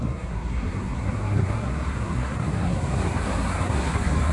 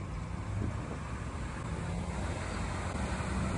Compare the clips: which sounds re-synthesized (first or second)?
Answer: first